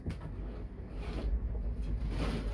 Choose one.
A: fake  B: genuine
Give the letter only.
B